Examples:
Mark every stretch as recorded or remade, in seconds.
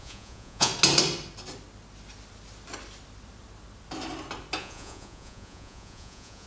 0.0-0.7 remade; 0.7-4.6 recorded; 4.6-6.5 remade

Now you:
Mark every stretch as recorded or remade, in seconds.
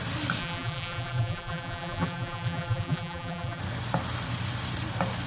0.0-0.4 recorded; 0.4-3.6 remade; 3.6-5.3 recorded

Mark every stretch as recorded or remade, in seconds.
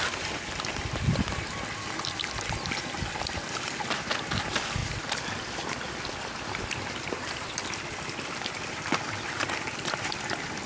0.0-4.8 recorded; 4.8-8.0 remade; 8.0-10.7 recorded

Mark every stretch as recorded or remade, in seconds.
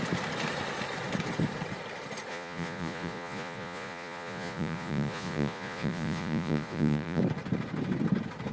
0.0-2.3 recorded; 2.3-7.2 remade; 7.2-8.5 recorded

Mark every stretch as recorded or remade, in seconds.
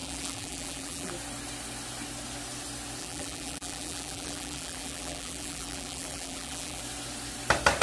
0.0-1.1 remade; 1.1-3.0 recorded; 3.0-6.8 remade; 6.8-7.8 recorded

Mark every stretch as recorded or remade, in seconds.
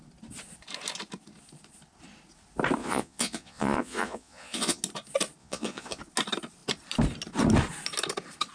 0.0-2.8 recorded; 2.8-4.8 remade; 4.8-5.4 recorded; 5.4-6.0 remade; 6.0-8.5 recorded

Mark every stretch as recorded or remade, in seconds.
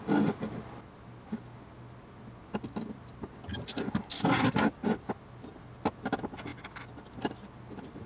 0.0-8.1 recorded